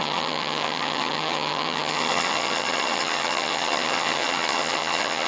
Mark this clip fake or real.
fake